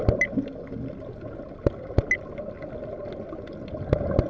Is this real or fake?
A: real